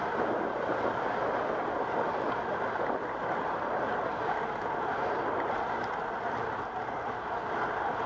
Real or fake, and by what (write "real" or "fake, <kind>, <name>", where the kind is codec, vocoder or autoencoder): real